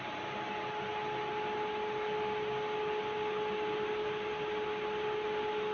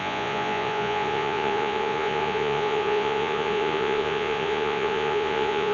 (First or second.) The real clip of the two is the first